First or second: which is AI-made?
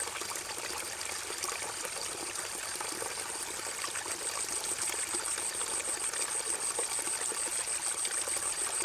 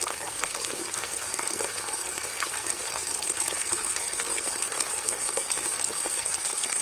second